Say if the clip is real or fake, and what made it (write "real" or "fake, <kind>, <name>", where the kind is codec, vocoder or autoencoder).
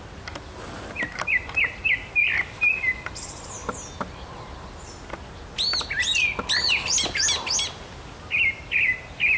real